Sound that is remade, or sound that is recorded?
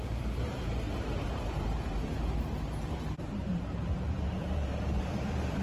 remade